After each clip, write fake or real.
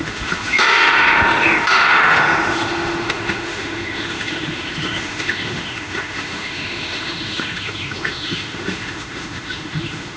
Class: fake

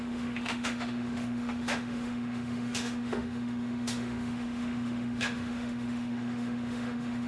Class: fake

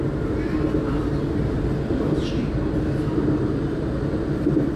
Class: real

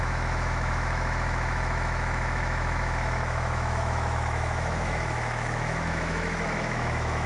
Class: fake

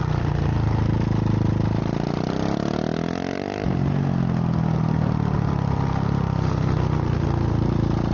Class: real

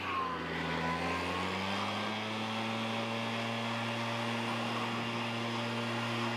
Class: real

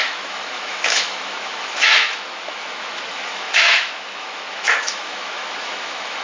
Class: fake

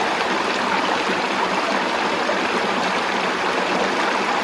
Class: real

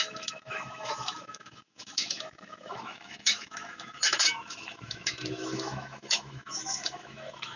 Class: fake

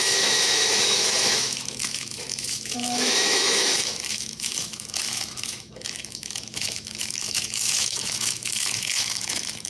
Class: fake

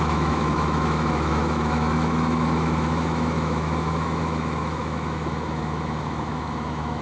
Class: fake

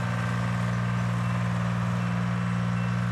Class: real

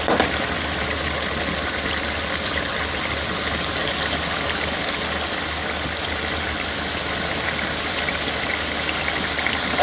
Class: real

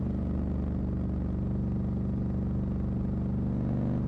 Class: real